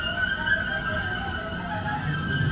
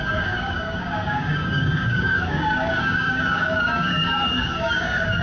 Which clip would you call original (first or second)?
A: first